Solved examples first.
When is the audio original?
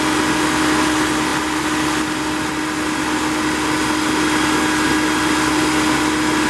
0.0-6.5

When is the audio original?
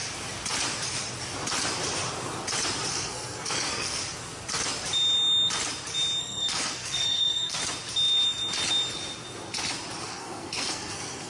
0.0-2.9; 4.0-6.2; 7.6-10.0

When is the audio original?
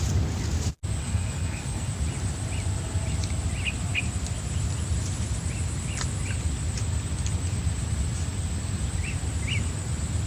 0.0-1.0; 1.9-10.3